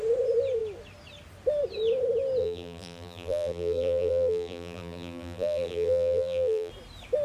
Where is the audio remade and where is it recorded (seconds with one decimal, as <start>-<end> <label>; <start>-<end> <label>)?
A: 0.0-2.4 recorded; 2.4-6.7 remade; 6.7-7.2 recorded